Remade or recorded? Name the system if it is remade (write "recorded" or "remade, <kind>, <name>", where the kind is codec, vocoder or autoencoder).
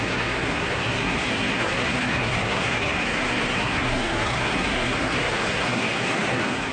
remade, codec, SNAC